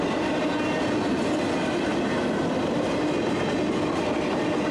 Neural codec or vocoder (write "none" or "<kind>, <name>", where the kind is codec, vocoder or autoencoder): none